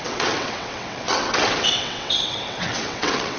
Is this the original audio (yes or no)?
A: no